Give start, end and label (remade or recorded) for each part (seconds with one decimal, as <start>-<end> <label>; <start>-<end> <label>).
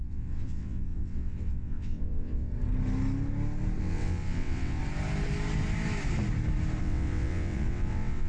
0.0-2.5 remade; 2.5-3.8 recorded; 3.8-4.8 remade; 4.8-6.8 recorded; 6.8-8.3 remade